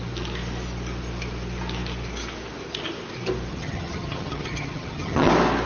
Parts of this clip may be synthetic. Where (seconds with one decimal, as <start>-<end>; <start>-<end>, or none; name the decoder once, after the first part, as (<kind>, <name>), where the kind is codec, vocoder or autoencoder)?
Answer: 3.5-5.3 (vocoder, HiFi-GAN)